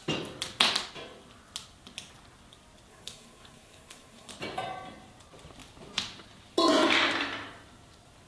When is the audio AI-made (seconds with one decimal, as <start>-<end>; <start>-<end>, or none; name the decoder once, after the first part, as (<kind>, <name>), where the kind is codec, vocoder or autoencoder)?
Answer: 2.9-4.3 (codec, SNAC)